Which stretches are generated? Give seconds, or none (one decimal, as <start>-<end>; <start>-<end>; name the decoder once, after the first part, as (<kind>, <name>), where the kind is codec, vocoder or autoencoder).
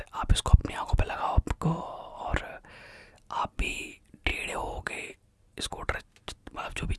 4.3-6.1 (vocoder, BigVGAN v2)